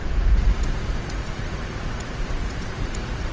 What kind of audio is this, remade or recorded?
remade